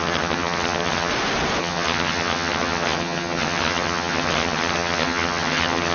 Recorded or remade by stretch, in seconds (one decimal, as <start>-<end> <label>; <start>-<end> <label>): 0.0-1.1 remade; 1.1-1.6 recorded; 1.6-5.9 remade